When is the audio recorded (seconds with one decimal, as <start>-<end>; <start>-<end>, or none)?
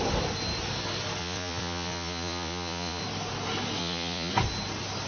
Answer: 0.0-1.2; 3.0-3.8; 4.3-5.1